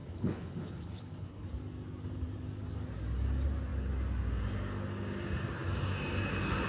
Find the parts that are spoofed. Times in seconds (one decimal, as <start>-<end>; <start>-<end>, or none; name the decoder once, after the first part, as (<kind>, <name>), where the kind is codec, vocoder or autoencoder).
0.0-1.5 (codec, HILCodec)